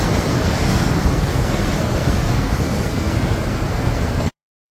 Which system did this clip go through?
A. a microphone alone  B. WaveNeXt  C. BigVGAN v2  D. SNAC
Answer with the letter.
D